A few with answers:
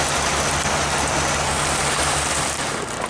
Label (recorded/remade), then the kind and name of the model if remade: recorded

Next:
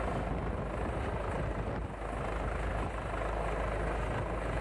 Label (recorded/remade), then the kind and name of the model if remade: recorded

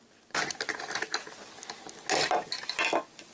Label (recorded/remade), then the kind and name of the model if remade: recorded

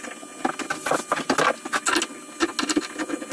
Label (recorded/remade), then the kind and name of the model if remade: recorded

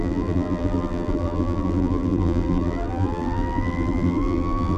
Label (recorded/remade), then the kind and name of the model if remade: remade, vocoder, BigVGAN v2